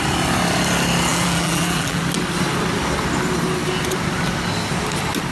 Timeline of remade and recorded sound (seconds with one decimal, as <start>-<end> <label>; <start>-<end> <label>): 0.0-1.1 recorded; 1.1-2.0 remade; 2.0-5.3 recorded